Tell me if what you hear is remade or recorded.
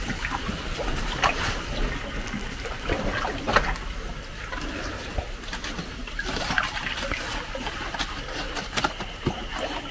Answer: recorded